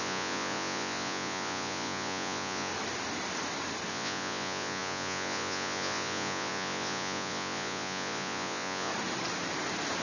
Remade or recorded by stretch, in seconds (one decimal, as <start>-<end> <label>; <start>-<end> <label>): 0.0-2.7 remade; 2.7-3.9 recorded; 3.9-8.9 remade; 8.9-10.0 recorded